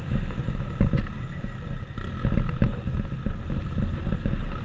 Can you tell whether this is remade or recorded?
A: recorded